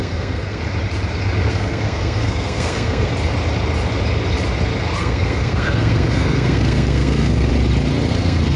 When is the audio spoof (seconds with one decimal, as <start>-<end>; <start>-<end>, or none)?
0.0-0.6; 1.5-3.1; 5.0-7.5; 8.1-8.6